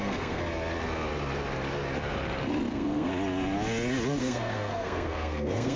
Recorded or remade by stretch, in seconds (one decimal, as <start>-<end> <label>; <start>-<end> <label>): 0.0-0.4 remade; 0.4-2.7 recorded; 2.7-3.1 remade; 3.1-4.2 recorded; 4.2-5.8 remade